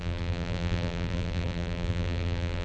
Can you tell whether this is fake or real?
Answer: fake